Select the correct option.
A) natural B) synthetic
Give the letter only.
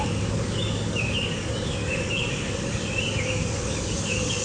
B